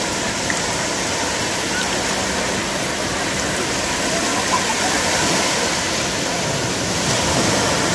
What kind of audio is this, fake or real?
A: real